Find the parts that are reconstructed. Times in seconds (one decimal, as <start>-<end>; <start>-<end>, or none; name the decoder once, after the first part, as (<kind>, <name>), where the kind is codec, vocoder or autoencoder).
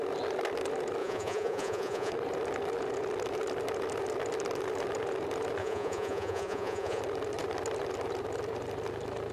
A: 1.0-2.1 (vocoder, Vocos); 5.6-7.0